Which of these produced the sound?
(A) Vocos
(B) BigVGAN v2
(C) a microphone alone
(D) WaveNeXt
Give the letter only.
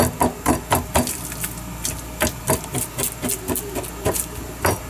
C